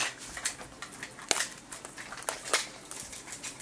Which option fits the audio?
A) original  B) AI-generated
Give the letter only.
A